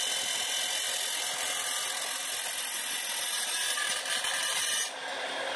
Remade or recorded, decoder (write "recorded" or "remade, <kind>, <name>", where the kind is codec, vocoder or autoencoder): recorded